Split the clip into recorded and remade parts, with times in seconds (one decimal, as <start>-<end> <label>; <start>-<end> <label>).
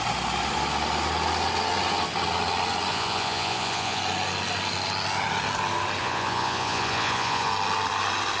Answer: 0.0-2.9 recorded; 2.9-4.0 remade; 4.0-6.0 recorded; 6.0-7.5 remade; 7.5-8.4 recorded